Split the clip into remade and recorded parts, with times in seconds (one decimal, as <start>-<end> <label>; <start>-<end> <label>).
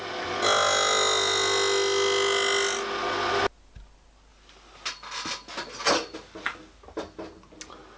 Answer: 0.0-8.0 recorded